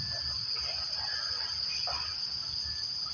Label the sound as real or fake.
real